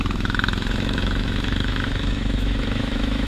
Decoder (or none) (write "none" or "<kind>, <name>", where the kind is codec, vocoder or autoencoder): autoencoder, DAC-VAE